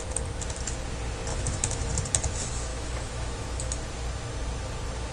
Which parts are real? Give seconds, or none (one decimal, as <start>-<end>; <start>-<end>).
0.0-1.3; 1.9-2.7; 3.6-5.1